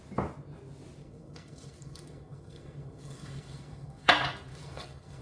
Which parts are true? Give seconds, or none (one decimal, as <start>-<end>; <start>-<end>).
0.0-1.0; 4.1-4.5